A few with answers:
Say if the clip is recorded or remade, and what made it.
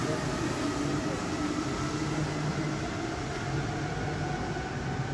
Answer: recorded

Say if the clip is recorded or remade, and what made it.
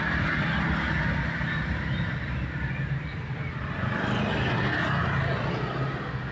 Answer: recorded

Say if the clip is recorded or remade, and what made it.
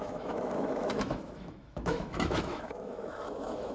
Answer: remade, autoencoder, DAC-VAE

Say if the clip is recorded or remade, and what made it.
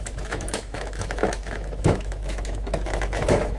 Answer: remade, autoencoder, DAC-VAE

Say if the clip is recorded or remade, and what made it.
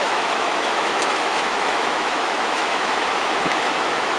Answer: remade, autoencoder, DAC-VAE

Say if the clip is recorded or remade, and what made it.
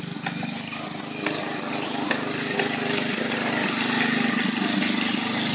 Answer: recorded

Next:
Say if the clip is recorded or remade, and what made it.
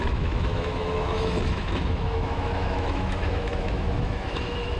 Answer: remade, autoencoder, DAC-VAE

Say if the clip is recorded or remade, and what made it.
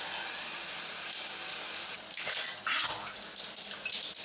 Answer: recorded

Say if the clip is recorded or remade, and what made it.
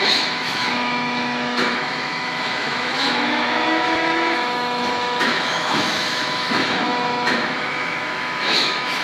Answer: remade, autoencoder, DAC-VAE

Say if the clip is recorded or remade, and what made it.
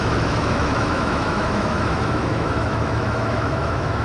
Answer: remade, autoencoder, DAC-VAE